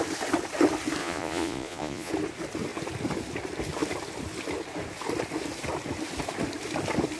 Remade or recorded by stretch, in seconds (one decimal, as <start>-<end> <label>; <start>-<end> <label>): 0.0-1.0 recorded; 1.0-2.1 remade; 2.1-7.2 recorded